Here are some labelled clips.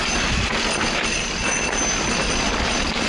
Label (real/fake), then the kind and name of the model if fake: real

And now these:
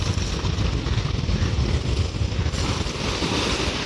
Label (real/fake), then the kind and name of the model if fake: real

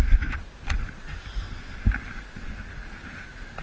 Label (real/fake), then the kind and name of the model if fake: real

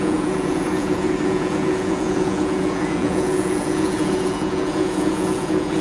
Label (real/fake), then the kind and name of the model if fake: fake, vocoder, Vocos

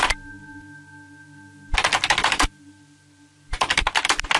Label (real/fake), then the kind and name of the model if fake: real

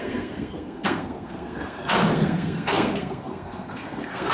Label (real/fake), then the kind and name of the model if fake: fake, codec, SNAC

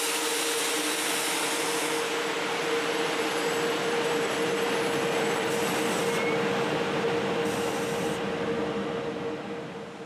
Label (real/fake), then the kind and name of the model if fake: real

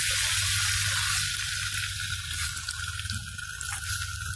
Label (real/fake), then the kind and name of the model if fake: real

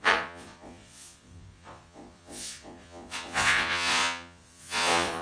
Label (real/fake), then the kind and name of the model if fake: fake, vocoder, Vocos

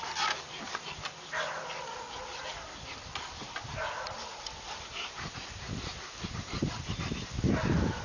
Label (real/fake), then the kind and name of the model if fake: real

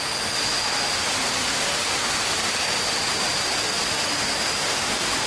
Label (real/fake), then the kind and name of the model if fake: real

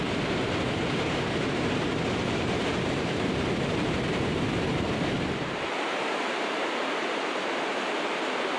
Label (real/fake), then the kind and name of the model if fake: fake, vocoder, BigVGAN v2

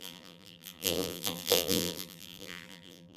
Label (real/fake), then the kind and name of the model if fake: fake, vocoder, BigVGAN v2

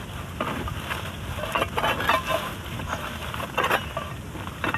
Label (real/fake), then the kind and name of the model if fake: real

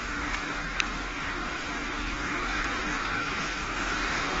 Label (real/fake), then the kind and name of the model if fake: fake, codec, DAC